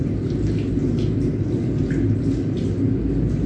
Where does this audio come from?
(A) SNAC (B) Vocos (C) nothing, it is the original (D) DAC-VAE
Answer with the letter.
C